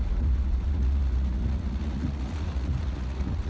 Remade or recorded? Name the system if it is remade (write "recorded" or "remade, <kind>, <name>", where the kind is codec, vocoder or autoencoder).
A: remade, vocoder, Vocos